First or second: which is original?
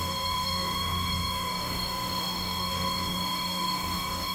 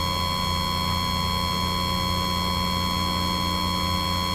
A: second